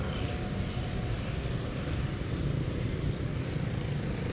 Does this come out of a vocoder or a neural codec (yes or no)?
yes